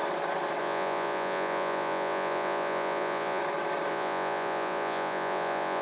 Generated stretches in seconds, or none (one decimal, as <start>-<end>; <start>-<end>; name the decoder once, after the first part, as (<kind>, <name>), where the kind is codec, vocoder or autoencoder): 0.6-3.4 (vocoder, Vocos); 3.9-5.8